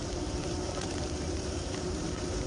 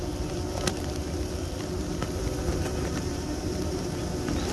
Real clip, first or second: second